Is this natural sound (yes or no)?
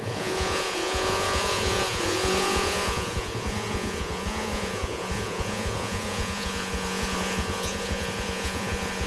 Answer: no